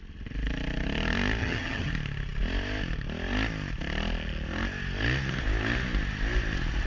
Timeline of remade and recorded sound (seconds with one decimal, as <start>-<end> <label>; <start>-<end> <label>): 0.0-1.4 recorded; 1.4-1.9 remade; 1.9-6.9 recorded